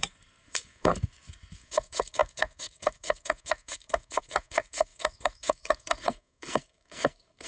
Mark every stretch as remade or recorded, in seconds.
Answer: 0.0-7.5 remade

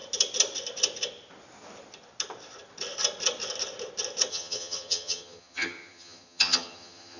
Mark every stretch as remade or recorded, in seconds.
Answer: 0.0-4.3 recorded; 4.3-7.2 remade

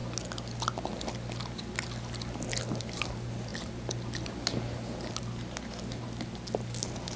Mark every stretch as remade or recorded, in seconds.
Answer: 0.0-7.2 recorded

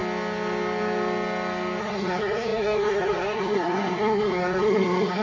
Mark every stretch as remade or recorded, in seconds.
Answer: 0.0-1.8 recorded; 1.8-5.2 remade

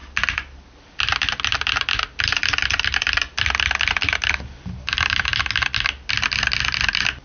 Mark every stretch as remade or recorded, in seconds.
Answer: 0.0-4.3 recorded; 4.3-5.3 remade; 5.3-7.2 recorded

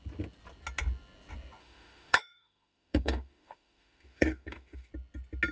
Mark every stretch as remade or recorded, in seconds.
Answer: 0.0-1.6 recorded; 1.6-4.9 remade; 4.9-5.5 recorded

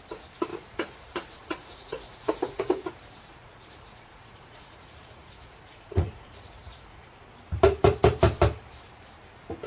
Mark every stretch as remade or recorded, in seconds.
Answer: 0.0-0.5 recorded; 0.5-2.9 remade; 2.9-3.4 recorded; 3.4-7.2 remade; 7.2-9.7 recorded

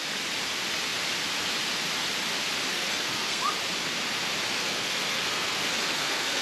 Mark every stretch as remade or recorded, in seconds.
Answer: 0.0-2.7 recorded; 2.7-3.4 remade; 3.4-4.6 recorded; 4.6-6.4 remade